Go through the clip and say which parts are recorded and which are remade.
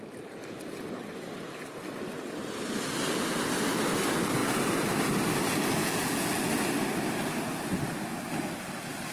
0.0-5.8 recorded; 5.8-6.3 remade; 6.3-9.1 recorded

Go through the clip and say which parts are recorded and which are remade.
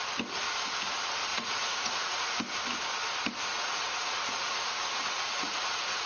0.0-1.3 recorded; 1.3-2.4 remade; 2.4-3.5 recorded; 3.5-6.1 remade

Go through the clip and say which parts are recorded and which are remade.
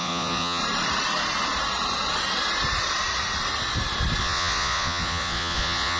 0.0-0.6 remade; 0.6-4.2 recorded; 4.2-6.0 remade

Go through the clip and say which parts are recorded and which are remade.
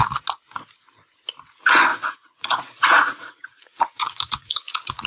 0.0-1.9 recorded; 1.9-5.1 remade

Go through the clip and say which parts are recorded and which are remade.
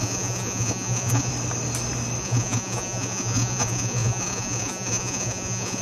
0.0-1.3 remade; 1.3-2.2 recorded; 2.2-5.8 remade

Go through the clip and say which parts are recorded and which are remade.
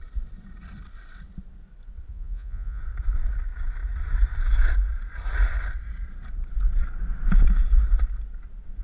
0.0-2.1 recorded; 2.1-2.8 remade; 2.8-8.8 recorded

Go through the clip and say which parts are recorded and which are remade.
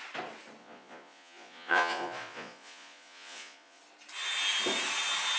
0.0-0.6 recorded; 0.6-3.8 remade; 3.8-5.4 recorded